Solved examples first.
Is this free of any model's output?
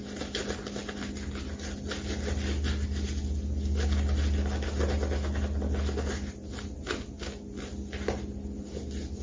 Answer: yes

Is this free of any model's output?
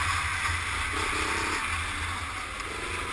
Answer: yes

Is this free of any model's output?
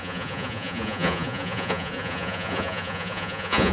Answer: no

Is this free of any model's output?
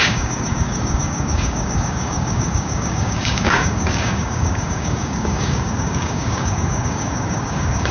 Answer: no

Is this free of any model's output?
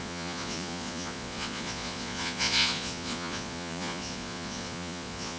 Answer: no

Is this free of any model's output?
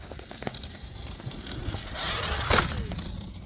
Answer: yes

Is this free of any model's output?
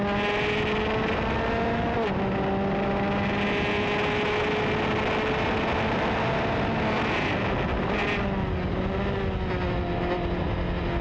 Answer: yes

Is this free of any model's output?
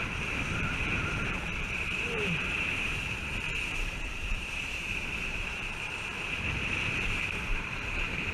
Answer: no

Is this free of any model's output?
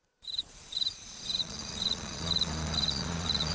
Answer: no